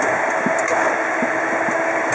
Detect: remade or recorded recorded